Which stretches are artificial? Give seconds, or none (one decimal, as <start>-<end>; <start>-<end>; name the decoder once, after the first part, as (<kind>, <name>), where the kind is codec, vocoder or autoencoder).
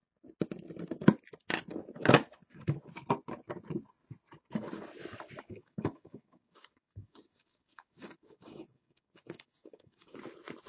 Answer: 5.5-10.2 (codec, DAC)